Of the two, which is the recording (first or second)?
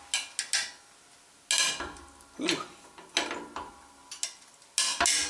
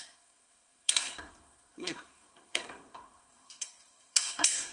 first